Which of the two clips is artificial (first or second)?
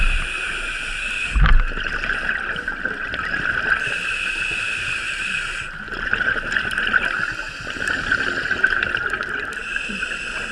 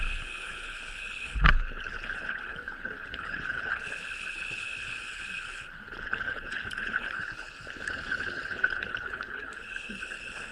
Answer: second